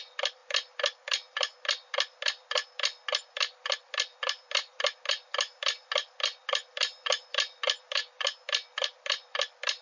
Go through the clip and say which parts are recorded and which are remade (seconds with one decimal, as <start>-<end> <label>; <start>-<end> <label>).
0.0-9.8 recorded